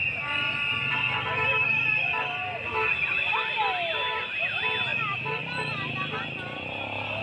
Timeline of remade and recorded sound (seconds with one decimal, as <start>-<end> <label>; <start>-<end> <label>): 0.0-4.9 recorded; 4.9-5.4 remade; 5.4-7.2 recorded